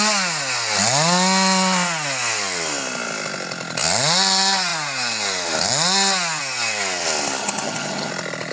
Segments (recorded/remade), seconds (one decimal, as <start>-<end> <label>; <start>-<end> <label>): 0.0-7.4 recorded; 7.4-8.1 remade; 8.1-8.5 recorded